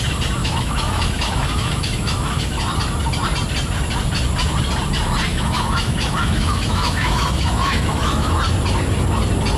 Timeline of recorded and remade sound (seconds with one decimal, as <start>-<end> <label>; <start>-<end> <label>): 0.0-0.4 recorded; 0.4-2.6 remade; 2.6-5.3 recorded; 5.3-8.3 remade; 8.3-9.6 recorded